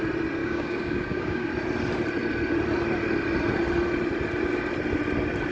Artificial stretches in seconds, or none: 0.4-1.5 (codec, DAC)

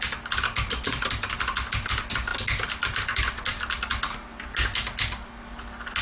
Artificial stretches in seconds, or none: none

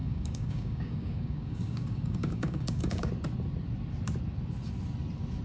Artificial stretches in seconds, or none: 0.0-3.1 (codec, DAC)

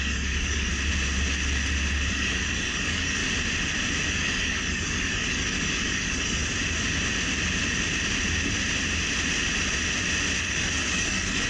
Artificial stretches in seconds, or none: 0.0-0.7 (codec, DAC); 2.1-3.2; 4.1-6.4; 10.4-11.5

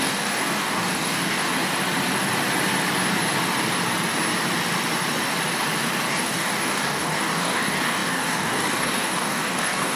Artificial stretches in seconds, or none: 0.0-1.5 (codec, DAC); 6.1-10.0

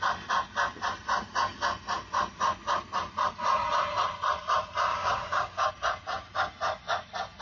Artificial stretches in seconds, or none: 4.9-5.7 (codec, DAC)